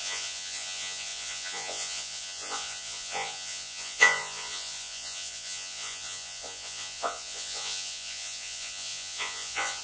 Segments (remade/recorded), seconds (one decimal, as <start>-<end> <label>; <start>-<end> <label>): 0.0-9.8 remade